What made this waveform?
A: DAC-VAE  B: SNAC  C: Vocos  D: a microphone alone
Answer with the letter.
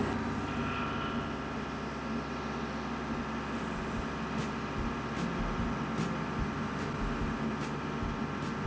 D